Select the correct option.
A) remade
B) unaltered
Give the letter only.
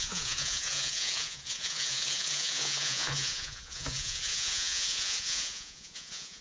A